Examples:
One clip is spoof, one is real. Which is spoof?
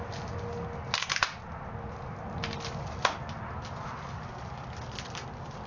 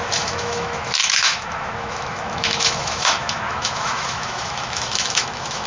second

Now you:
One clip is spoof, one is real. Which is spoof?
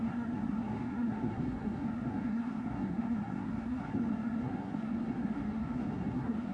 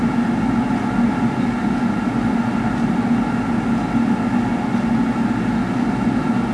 first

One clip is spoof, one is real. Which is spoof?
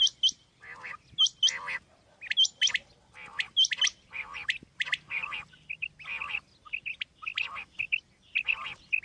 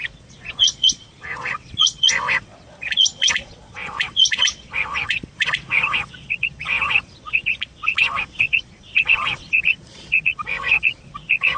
second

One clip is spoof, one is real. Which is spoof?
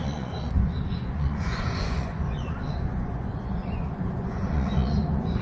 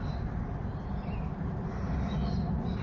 first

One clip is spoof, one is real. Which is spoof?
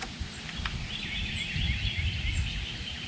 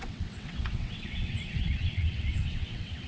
second